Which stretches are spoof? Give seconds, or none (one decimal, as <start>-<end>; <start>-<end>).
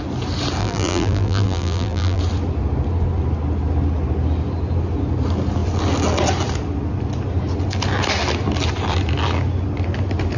0.6-2.2